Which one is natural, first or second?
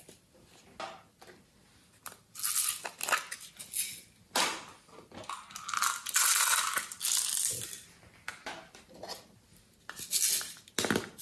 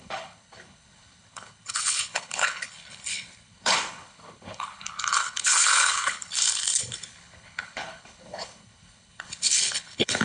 first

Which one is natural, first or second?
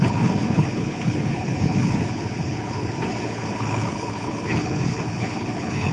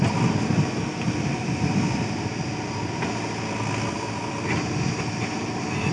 second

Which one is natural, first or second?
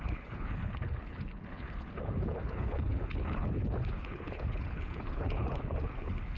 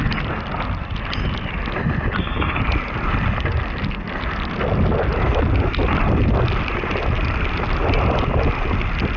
second